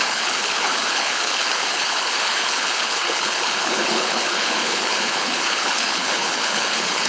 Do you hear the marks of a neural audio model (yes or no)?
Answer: yes